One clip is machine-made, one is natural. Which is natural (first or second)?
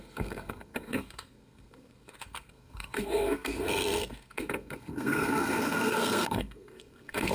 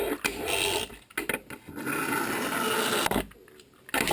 second